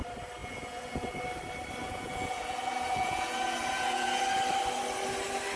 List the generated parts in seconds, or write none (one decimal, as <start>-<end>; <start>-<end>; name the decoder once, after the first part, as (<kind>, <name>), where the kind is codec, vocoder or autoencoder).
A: 0.4-1.2 (vocoder, Vocos); 1.8-4.2